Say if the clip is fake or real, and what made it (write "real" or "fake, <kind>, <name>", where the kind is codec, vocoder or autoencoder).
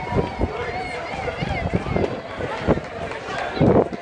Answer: real